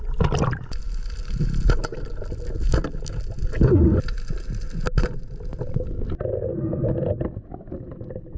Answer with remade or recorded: recorded